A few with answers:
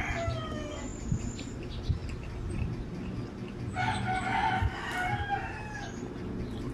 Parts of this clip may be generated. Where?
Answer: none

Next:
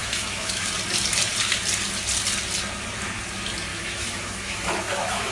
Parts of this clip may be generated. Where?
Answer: 0.0-0.7 (autoencoder, DAC-VAE); 3.7-5.3

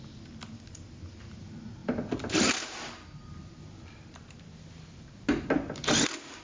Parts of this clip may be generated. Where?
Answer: none

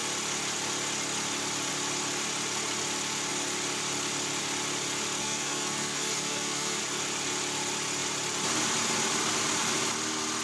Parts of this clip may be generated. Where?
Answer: 5.2-6.8 (codec, SNAC)

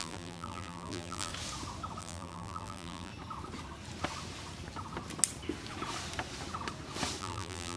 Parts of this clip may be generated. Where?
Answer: 0.0-1.3 (vocoder, BigVGAN v2); 2.0-3.1; 7.2-7.8